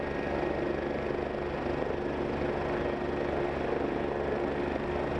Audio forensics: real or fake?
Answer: real